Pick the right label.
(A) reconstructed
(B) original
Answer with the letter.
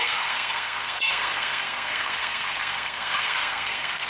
A